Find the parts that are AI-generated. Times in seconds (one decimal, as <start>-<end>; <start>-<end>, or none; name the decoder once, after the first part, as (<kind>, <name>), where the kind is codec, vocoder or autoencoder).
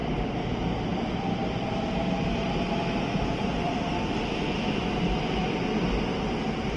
0.0-0.5 (vocoder, BigVGAN v2); 0.9-5.0